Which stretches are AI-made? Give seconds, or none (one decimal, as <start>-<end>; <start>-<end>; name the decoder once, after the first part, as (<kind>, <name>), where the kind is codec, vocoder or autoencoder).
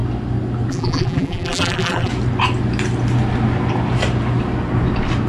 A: 0.7-2.1 (vocoder, BigVGAN v2)